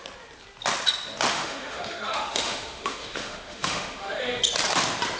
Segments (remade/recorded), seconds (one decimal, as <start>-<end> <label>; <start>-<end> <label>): 0.0-1.3 recorded; 1.3-4.4 remade; 4.4-5.2 recorded